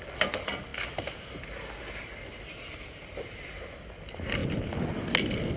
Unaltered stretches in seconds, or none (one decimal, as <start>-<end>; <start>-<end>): 0.0-5.6

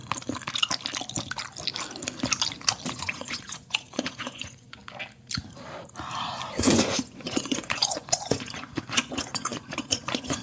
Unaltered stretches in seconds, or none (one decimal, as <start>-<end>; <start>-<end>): 0.0-2.9; 4.8-6.5

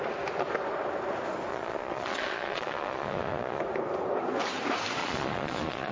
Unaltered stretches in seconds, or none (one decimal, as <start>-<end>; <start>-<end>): 0.0-1.5; 3.6-5.0

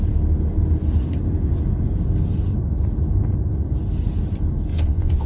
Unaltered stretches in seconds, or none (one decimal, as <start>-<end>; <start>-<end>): 0.0-4.7